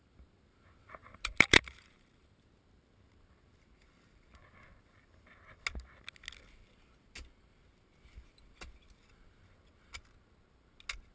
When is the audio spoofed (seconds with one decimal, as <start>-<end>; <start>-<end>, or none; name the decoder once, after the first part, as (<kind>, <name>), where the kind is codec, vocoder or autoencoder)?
1.0-2.4 (vocoder, BigVGAN v2)